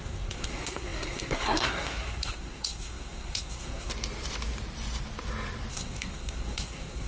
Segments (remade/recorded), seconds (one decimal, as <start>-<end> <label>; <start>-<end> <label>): 0.0-3.9 remade; 3.9-5.7 recorded; 5.7-7.1 remade